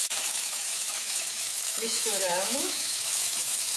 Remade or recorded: remade